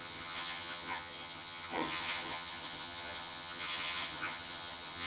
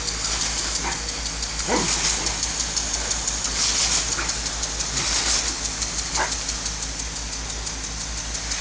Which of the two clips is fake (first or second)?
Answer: first